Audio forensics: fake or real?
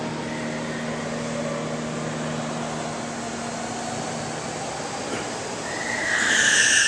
real